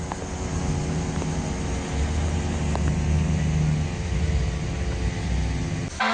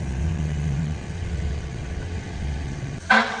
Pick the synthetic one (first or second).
second